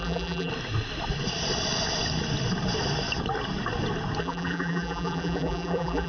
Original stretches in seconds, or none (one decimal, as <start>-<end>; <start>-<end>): 0.5-4.2